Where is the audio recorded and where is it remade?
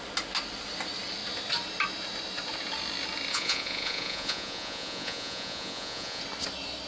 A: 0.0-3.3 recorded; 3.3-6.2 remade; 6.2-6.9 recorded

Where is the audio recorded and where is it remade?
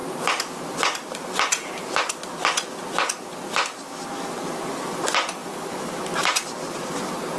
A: 0.0-2.1 remade; 2.1-5.4 recorded; 5.4-7.4 remade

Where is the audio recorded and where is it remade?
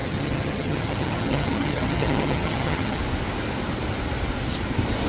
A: 0.0-3.0 remade; 3.0-5.1 recorded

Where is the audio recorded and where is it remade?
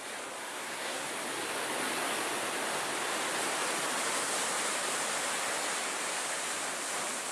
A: 0.0-0.4 recorded; 0.4-1.1 remade; 1.1-7.3 recorded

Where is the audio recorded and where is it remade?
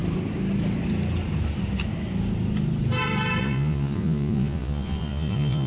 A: 0.0-3.4 recorded; 3.4-5.7 remade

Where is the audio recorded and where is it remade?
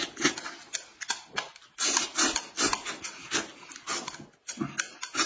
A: 0.0-5.3 recorded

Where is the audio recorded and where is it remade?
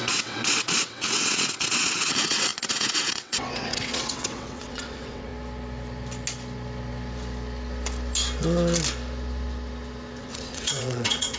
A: 0.0-5.3 remade; 5.3-10.2 recorded; 10.2-11.4 remade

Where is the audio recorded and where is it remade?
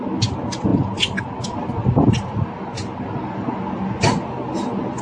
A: 0.0-5.0 recorded